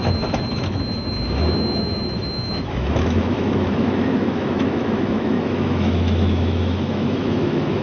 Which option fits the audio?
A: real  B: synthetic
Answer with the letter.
B